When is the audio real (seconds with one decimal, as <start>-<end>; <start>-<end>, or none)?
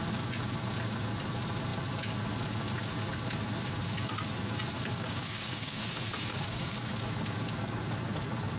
0.0-4.7; 5.8-6.3; 6.9-8.6